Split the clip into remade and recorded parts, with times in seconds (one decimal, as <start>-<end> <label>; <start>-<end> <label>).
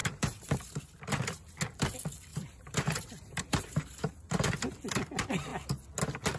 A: 0.0-1.1 remade; 1.1-2.3 recorded; 2.3-4.5 remade; 4.5-6.4 recorded